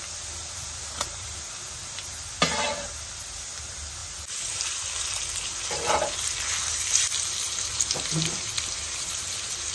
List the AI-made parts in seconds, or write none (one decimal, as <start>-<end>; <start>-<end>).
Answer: none